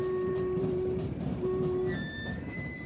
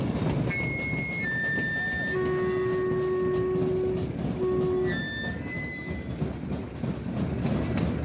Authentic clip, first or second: second